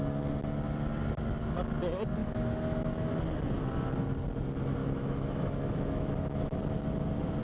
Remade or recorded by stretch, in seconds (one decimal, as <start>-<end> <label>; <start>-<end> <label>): 0.0-2.2 recorded; 2.2-3.1 remade; 3.1-4.8 recorded; 4.8-6.6 remade; 6.6-7.4 recorded